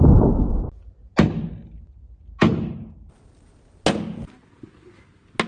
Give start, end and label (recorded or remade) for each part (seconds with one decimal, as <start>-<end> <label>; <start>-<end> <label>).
0.0-2.5 recorded; 2.5-3.1 remade; 3.1-5.5 recorded